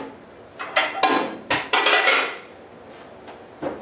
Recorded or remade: recorded